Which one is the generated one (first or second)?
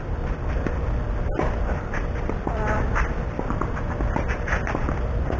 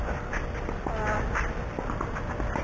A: first